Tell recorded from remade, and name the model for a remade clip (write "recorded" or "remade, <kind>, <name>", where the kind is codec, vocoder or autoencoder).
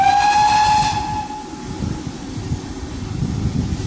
recorded